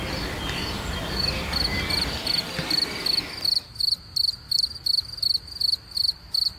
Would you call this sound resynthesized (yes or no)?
no